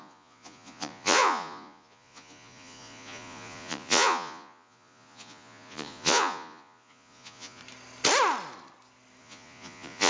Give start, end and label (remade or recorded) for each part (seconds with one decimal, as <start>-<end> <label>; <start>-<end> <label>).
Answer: 0.0-7.6 remade; 7.6-9.2 recorded; 9.2-10.1 remade